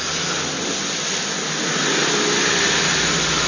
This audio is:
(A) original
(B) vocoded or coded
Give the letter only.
A